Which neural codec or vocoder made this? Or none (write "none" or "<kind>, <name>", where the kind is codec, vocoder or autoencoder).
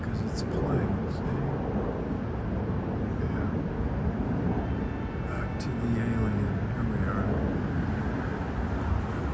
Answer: none